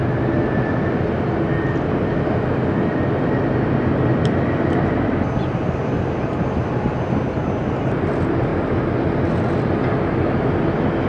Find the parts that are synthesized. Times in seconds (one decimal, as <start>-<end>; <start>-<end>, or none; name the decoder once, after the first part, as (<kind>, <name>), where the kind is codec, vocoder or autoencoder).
none